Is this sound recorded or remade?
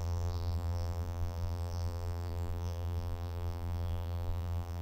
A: remade